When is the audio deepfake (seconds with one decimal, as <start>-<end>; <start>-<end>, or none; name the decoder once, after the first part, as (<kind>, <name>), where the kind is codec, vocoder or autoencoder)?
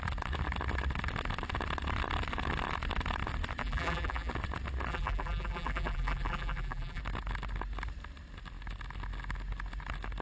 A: 3.6-4.3 (vocoder, BigVGAN v2); 4.9-7.0